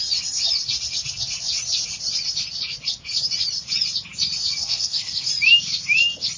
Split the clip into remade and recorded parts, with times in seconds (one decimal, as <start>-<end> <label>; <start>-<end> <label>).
0.0-4.6 recorded; 4.6-5.3 remade; 5.3-6.4 recorded